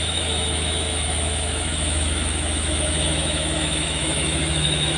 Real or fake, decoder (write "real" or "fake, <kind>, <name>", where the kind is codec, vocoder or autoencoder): fake, autoencoder, DAC-VAE